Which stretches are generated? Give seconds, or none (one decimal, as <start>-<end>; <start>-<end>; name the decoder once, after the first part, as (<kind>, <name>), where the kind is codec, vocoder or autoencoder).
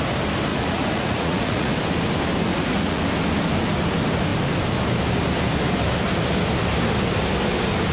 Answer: 0.5-1.7 (vocoder, Vocos); 2.5-3.0